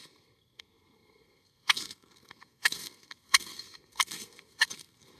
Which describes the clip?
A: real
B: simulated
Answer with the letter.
B